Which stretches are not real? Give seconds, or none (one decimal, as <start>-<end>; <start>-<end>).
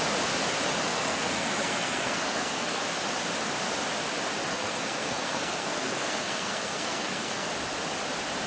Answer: 0.9-2.8; 4.5-7.5